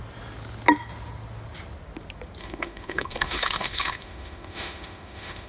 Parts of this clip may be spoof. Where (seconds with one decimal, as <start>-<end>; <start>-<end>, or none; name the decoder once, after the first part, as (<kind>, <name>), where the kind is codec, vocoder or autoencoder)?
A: 2.4-5.5 (autoencoder, DAC-VAE)